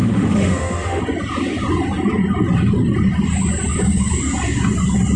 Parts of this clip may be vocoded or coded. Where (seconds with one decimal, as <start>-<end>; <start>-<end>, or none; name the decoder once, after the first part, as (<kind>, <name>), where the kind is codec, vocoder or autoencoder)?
0.0-1.0 (autoencoder, DAC-VAE)